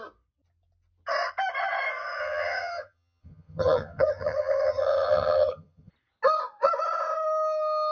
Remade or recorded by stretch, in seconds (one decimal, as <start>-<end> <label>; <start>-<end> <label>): 0.0-2.2 recorded; 2.2-5.9 remade; 5.9-7.9 recorded